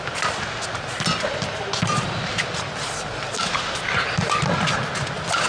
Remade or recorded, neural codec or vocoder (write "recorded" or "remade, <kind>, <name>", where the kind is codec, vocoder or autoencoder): recorded